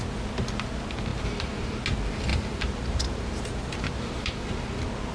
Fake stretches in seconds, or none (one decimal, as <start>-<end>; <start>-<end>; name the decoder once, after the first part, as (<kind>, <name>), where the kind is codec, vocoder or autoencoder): 1.1-1.7 (vocoder, BigVGAN v2); 2.3-4.6